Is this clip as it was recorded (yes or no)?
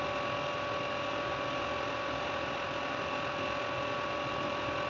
yes